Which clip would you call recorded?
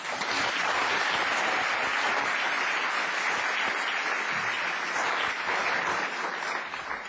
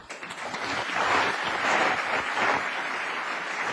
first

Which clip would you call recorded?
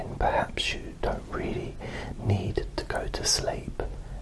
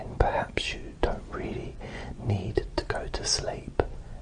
first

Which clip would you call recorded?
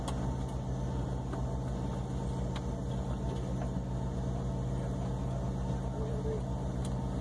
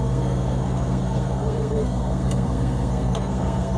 first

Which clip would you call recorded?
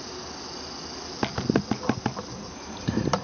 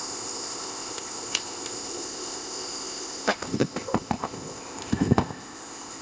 first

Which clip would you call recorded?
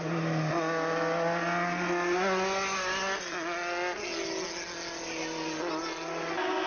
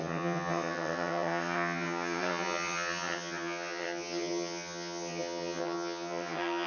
first